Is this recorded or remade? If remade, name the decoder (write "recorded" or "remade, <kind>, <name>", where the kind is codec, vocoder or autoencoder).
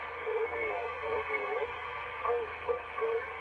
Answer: remade, codec, SNAC